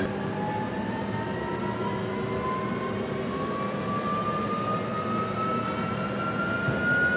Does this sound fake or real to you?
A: real